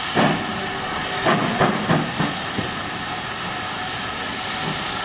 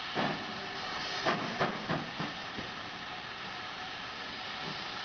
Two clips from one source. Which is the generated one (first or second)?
second